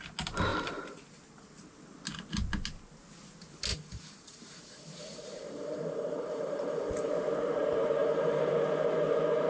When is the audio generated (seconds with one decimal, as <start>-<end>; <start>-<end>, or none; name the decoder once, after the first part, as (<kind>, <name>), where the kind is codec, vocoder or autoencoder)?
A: 0.5-1.0 (vocoder, BigVGAN v2); 3.7-7.1; 8.0-8.5